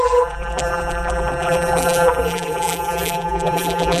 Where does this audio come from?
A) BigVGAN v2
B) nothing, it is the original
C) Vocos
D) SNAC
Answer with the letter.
A